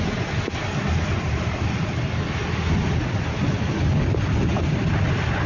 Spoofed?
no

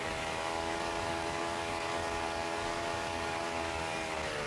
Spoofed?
yes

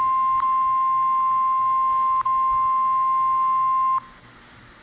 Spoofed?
no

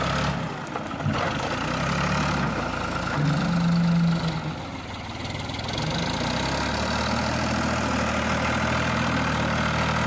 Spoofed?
no